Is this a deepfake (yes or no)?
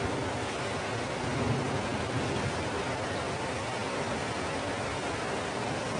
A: no